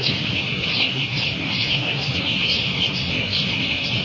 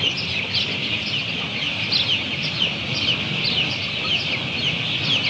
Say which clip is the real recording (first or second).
second